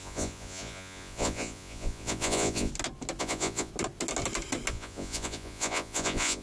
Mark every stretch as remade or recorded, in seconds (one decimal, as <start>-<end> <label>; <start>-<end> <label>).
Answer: 0.0-2.7 remade; 2.7-3.2 recorded; 3.2-3.7 remade; 3.7-4.7 recorded; 4.7-6.4 remade